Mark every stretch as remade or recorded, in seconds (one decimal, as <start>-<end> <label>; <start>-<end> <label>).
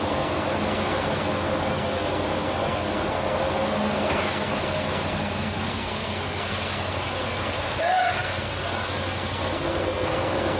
0.0-10.6 remade